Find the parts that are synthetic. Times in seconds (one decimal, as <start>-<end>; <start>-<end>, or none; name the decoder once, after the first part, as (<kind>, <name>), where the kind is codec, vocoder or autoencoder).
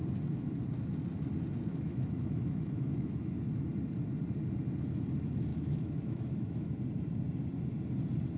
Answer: 1.7-3.3 (autoencoder, DAC-VAE); 5.5-6.7